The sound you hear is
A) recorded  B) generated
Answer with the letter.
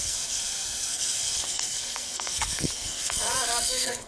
B